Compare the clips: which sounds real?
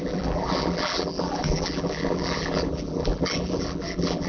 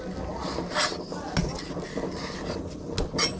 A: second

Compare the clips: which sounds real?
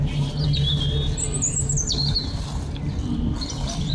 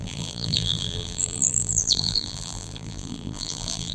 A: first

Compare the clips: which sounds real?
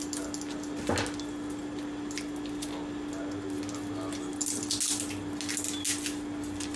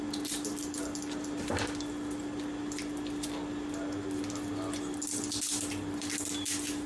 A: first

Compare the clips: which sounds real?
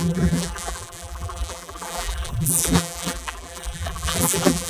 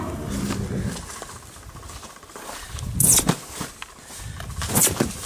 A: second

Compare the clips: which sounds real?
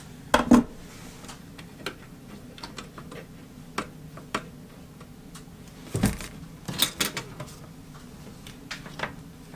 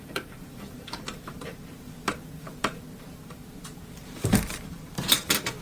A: first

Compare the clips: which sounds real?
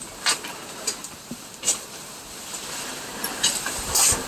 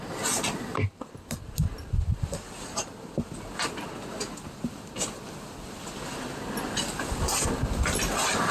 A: second